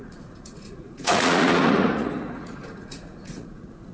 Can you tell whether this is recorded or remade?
remade